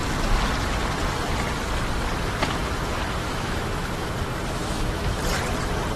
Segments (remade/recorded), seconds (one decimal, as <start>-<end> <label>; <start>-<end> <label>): 0.0-3.2 recorded; 3.2-4.1 remade; 4.1-4.6 recorded; 4.6-5.2 remade; 5.2-6.0 recorded